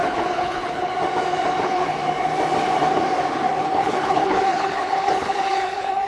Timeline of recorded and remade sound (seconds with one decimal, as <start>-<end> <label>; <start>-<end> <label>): 0.0-0.9 remade; 0.9-1.6 recorded; 1.6-2.0 remade; 2.0-3.5 recorded; 3.5-6.1 remade